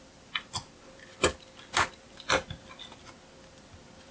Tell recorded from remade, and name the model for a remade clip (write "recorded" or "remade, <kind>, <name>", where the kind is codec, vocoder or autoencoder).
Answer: recorded